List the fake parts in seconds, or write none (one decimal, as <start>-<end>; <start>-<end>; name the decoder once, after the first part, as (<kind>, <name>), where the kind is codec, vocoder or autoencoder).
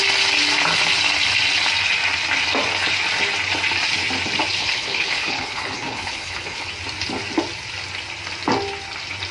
4.6-6.7 (codec, HILCodec)